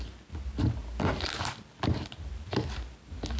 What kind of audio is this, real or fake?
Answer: real